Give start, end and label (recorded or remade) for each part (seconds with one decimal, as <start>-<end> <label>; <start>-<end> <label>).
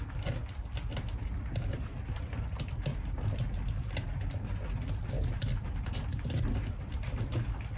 0.0-7.8 recorded